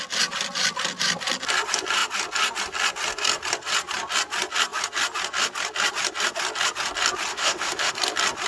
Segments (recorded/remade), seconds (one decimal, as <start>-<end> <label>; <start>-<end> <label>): 0.0-7.3 recorded; 7.3-7.9 remade; 7.9-8.5 recorded